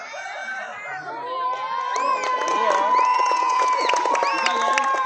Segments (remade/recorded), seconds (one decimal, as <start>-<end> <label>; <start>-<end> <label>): 0.0-3.1 recorded; 3.1-4.1 remade; 4.1-5.1 recorded